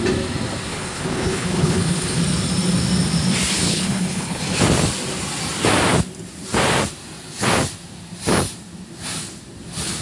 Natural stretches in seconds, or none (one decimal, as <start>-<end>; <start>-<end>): 0.0-0.7; 2.2-3.5; 4.4-10.0